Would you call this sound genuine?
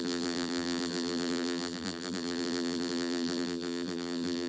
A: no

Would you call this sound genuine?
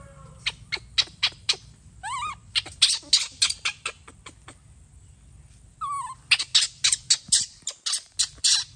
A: yes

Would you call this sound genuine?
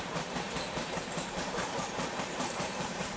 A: no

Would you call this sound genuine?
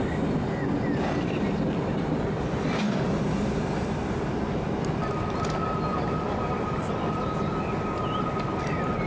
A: yes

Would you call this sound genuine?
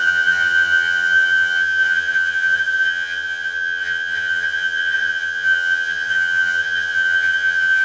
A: no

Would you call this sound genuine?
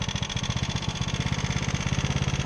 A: yes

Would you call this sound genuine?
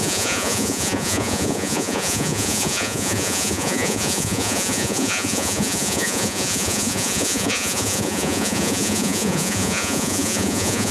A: no